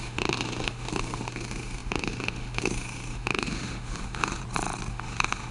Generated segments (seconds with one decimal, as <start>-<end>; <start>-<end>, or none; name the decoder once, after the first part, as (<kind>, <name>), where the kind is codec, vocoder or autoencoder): 0.0-4.4 (autoencoder, DAC-VAE); 4.9-5.5